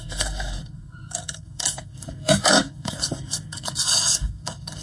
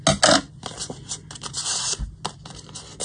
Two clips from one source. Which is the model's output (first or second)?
first